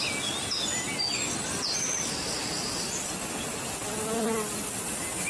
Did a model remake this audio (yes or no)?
no